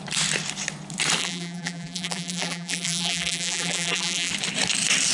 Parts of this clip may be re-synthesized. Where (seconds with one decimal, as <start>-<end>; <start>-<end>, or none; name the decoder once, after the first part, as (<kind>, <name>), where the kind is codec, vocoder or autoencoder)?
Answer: 1.2-4.3 (vocoder, BigVGAN v2)